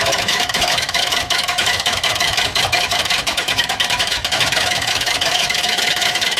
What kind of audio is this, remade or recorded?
remade